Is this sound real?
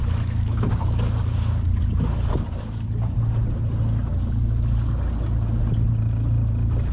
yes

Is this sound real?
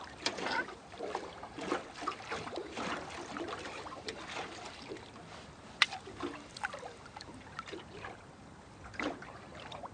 no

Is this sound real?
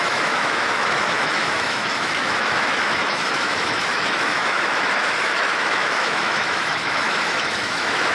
no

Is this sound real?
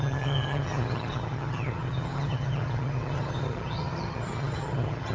no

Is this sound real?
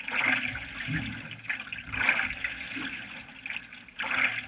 yes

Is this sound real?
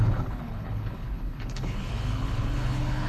no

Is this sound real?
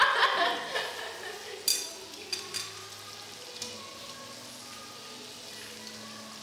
yes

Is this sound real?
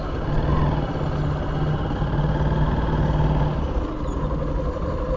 yes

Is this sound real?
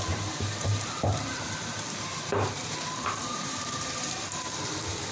no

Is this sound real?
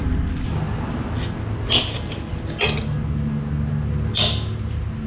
yes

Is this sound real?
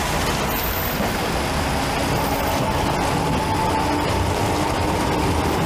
yes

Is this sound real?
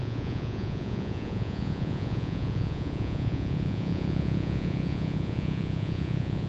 no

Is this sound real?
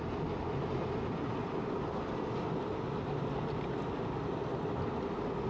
yes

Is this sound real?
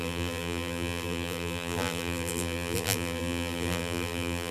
no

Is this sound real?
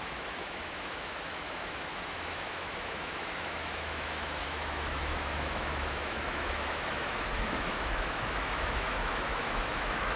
no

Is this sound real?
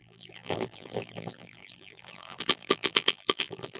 no